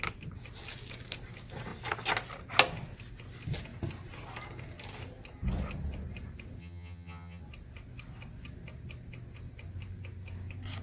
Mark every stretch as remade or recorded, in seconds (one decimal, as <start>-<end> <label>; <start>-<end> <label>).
0.0-6.6 recorded; 6.6-7.4 remade; 7.4-10.8 recorded